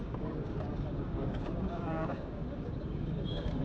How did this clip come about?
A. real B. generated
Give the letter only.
B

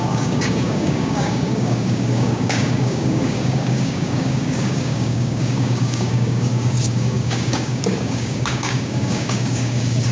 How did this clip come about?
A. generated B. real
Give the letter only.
A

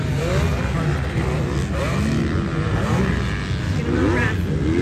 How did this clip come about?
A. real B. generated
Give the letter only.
A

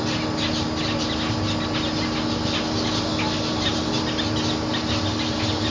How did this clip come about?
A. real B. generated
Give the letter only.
A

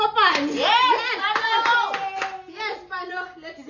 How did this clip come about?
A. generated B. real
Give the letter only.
B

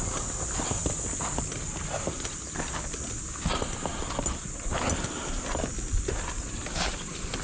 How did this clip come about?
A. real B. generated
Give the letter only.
A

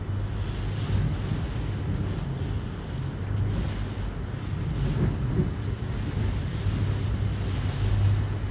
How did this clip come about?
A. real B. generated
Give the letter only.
A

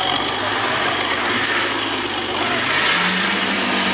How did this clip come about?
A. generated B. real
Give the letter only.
B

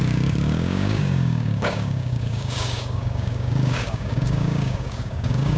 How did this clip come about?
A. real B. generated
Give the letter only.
B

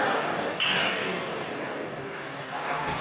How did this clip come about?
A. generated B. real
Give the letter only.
A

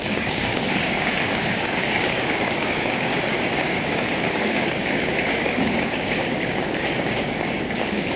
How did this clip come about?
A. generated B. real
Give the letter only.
A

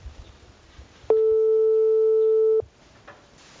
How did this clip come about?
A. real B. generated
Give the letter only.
A